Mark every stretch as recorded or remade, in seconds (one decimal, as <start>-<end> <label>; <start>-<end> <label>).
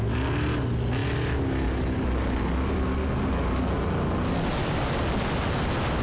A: 0.0-6.0 recorded